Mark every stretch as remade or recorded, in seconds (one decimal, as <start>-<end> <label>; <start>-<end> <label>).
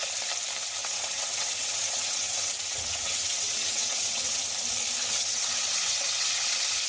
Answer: 0.0-0.8 recorded; 0.8-4.5 remade; 4.5-5.0 recorded; 5.0-6.5 remade; 6.5-6.9 recorded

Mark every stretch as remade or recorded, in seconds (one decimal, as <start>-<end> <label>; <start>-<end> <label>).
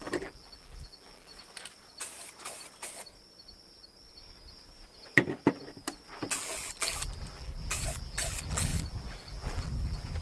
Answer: 0.0-1.3 remade; 1.3-6.3 recorded; 6.3-10.2 remade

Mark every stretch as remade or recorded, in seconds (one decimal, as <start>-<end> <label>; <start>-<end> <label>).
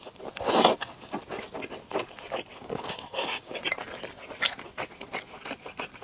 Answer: 0.0-2.5 recorded; 2.5-3.6 remade; 3.6-6.0 recorded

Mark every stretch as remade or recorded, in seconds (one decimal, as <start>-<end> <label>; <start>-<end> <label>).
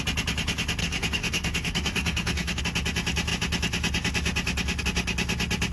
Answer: 0.0-0.8 recorded; 0.8-2.6 remade; 2.6-5.7 recorded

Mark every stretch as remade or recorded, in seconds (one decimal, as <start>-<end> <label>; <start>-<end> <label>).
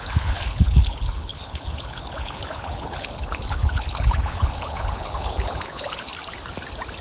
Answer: 0.0-6.1 remade; 6.1-7.0 recorded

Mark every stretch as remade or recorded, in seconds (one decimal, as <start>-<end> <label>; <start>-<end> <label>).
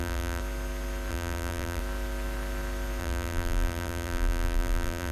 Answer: 0.0-0.4 remade; 0.4-1.1 recorded; 1.1-1.8 remade; 1.8-3.0 recorded; 3.0-5.1 remade